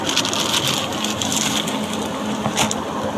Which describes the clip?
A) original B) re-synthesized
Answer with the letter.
A